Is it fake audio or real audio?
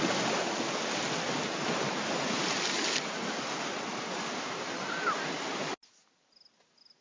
real